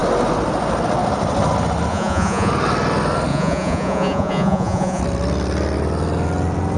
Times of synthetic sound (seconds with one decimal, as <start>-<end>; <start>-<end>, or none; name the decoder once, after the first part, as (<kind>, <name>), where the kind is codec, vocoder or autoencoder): 1.9-2.5 (vocoder, Vocos); 3.3-5.0